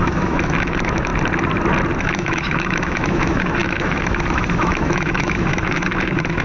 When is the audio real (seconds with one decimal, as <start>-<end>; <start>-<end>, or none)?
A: 1.1-2.0